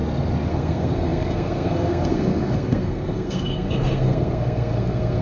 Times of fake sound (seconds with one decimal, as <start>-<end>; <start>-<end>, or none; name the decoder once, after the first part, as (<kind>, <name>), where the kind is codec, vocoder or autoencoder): 0.5-5.2 (codec, SNAC)